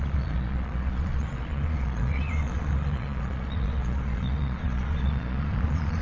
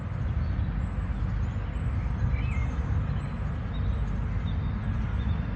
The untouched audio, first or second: second